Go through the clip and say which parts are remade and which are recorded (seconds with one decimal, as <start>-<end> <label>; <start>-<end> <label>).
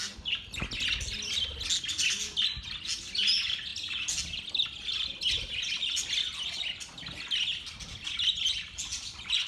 0.0-9.5 recorded